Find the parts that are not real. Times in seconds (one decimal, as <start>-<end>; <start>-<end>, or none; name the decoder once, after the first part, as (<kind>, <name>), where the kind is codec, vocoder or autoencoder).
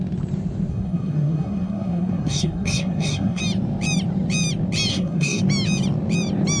0.7-3.4 (codec, SNAC); 4.9-5.4